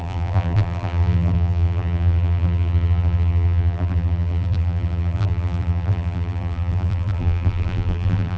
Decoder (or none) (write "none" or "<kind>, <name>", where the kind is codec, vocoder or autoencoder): vocoder, BigVGAN v2